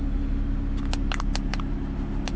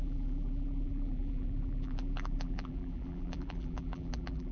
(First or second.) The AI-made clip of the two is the second